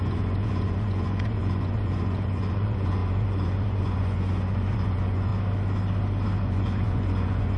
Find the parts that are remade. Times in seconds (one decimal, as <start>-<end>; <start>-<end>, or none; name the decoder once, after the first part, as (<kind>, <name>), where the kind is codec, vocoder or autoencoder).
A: 0.0-5.3 (vocoder, Vocos); 6.4-7.6